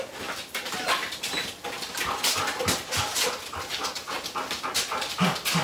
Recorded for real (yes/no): yes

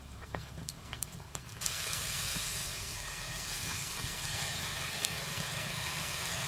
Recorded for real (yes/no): no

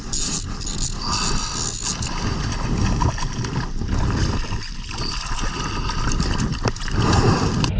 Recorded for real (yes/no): yes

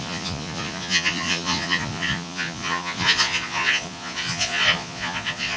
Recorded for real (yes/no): no